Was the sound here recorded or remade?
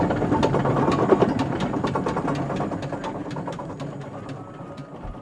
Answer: recorded